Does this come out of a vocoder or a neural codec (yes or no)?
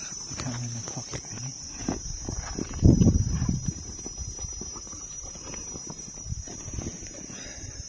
yes